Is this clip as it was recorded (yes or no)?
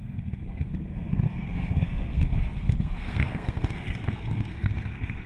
no